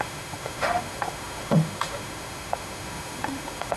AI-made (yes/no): yes